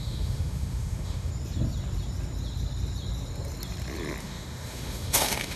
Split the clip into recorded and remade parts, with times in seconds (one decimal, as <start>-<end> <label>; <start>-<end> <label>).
0.0-1.3 remade; 1.3-4.2 recorded; 4.2-5.6 remade